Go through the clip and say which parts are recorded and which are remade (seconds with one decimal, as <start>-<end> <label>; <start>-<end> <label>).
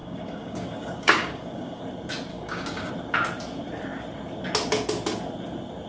0.0-1.8 remade; 1.8-2.3 recorded; 2.3-2.9 remade; 2.9-5.9 recorded